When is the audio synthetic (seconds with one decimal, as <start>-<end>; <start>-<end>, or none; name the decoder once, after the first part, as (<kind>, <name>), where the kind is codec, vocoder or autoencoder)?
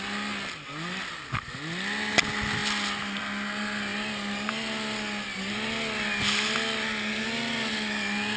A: none